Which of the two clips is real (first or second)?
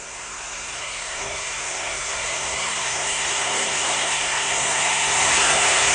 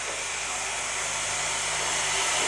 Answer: second